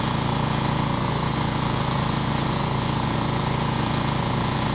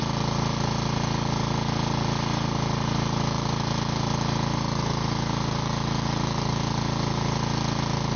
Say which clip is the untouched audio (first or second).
second